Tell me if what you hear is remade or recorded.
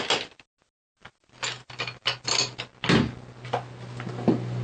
recorded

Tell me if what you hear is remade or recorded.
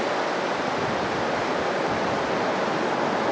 recorded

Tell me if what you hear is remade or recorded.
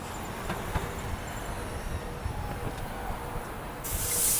recorded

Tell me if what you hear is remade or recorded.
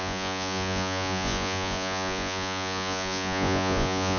remade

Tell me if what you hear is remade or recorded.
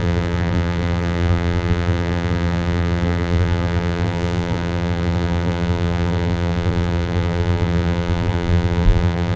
remade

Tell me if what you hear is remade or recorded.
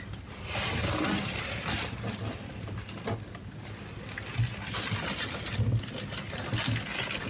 recorded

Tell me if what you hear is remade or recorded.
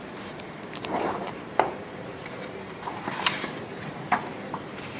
remade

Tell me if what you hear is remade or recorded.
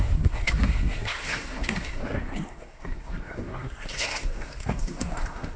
remade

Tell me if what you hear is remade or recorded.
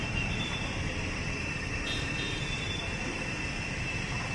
remade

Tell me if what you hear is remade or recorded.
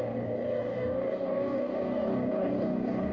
remade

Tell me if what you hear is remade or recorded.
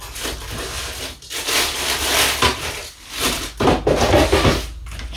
recorded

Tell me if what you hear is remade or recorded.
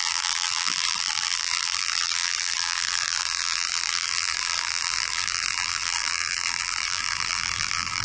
remade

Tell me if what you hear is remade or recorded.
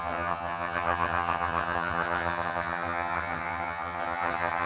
remade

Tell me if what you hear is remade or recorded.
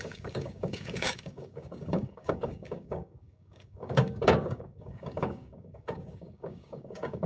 remade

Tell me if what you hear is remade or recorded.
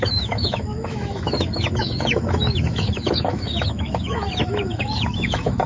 remade